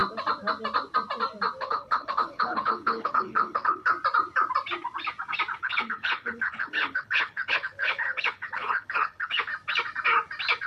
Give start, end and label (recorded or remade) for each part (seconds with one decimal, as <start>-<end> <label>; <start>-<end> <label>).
0.0-1.6 recorded; 1.6-3.9 remade; 3.9-5.6 recorded; 5.6-9.5 remade; 9.5-10.7 recorded